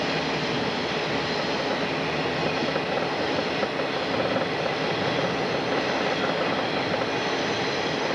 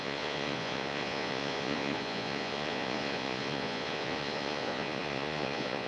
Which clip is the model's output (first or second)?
second